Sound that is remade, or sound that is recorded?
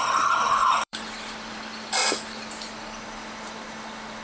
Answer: remade